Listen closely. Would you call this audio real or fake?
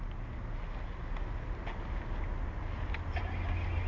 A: real